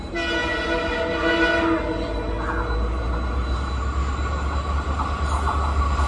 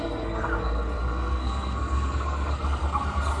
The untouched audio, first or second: first